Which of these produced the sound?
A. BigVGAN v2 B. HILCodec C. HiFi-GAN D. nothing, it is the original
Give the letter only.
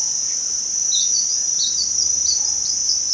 A